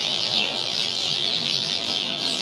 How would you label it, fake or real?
fake